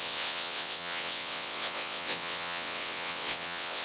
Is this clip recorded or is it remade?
remade